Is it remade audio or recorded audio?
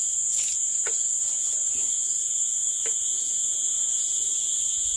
remade